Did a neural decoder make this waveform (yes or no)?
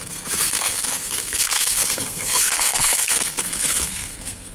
yes